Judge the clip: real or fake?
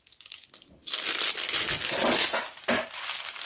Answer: real